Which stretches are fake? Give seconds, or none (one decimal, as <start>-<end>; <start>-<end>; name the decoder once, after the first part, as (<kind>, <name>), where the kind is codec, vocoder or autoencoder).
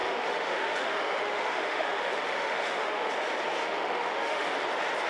0.0-3.1 (autoencoder, DAC-VAE); 3.6-4.5